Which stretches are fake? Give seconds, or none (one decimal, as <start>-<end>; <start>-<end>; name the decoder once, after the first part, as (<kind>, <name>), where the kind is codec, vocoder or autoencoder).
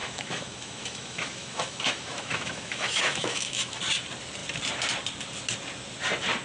0.0-3.8 (autoencoder, DAC-VAE)